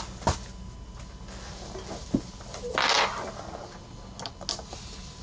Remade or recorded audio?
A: recorded